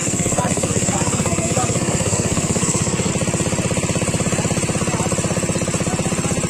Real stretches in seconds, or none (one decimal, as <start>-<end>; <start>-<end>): 3.1-6.5